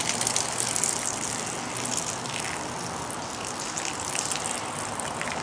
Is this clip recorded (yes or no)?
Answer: yes